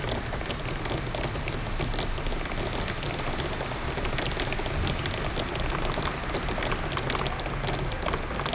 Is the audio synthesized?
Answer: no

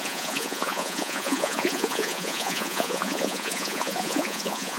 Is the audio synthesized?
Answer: yes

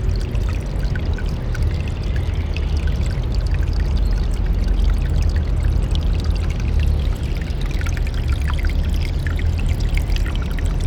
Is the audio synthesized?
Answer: no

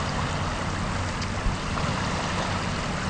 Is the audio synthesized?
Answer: no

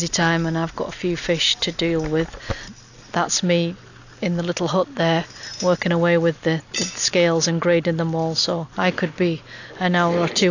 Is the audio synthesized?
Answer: no